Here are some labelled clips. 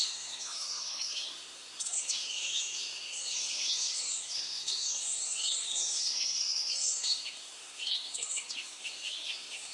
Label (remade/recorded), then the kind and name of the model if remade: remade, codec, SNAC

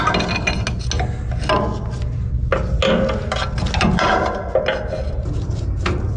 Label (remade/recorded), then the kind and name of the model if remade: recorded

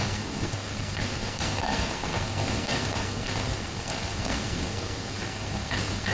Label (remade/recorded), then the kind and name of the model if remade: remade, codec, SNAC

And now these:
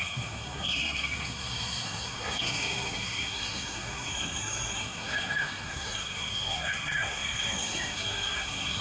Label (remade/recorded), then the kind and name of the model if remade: remade, codec, SNAC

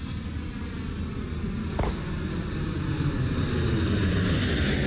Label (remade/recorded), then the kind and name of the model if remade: recorded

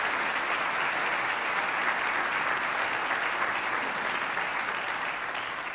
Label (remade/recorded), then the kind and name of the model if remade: recorded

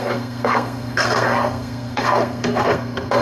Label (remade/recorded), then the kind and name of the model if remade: remade, codec, SNAC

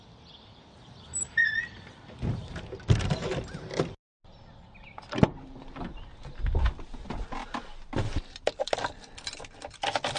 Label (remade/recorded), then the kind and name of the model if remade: recorded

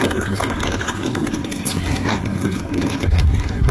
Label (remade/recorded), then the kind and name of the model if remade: remade, codec, SNAC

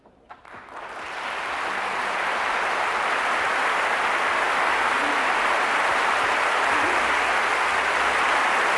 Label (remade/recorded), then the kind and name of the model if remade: recorded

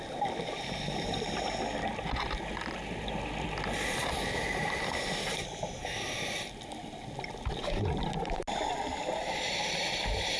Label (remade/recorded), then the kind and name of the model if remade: recorded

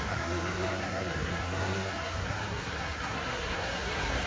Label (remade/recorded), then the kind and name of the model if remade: remade, codec, SNAC